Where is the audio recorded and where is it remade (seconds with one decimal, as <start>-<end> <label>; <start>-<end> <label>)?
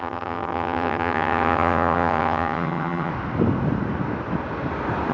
0.0-3.1 remade; 3.1-5.1 recorded